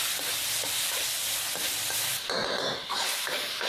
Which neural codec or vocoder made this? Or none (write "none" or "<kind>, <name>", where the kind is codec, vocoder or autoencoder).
none